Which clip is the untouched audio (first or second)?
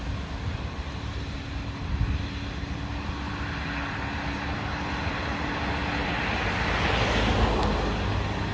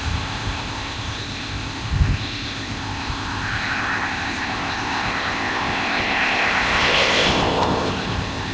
first